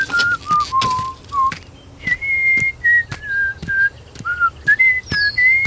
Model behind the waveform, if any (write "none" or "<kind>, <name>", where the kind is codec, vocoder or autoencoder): none